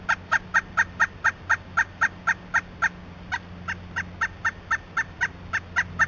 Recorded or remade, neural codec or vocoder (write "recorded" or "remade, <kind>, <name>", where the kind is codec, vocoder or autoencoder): recorded